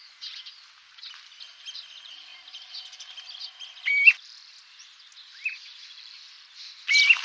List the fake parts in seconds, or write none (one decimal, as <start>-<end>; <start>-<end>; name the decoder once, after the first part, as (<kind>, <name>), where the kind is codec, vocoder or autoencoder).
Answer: none